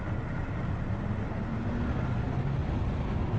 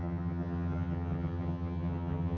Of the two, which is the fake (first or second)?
second